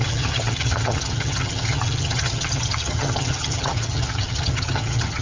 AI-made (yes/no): yes